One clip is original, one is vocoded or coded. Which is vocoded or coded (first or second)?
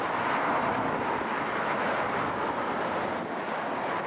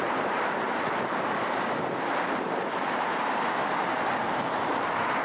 second